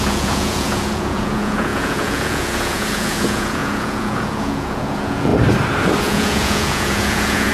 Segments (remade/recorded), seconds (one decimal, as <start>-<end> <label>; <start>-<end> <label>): 0.0-5.3 remade; 5.3-6.0 recorded; 6.0-7.5 remade